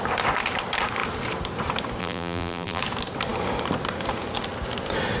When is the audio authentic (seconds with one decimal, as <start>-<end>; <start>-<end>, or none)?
0.0-2.0; 2.8-5.2